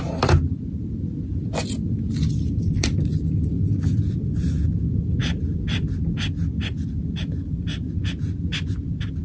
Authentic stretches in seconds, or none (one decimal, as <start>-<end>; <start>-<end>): 0.0-9.2